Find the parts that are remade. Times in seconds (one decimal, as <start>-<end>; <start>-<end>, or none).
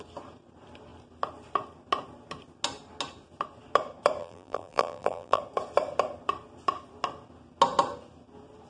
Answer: 4.2-5.4